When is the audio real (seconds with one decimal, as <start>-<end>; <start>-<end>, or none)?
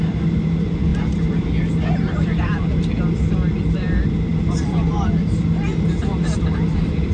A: 0.0-7.1